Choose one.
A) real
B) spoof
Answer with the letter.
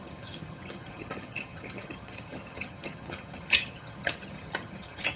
B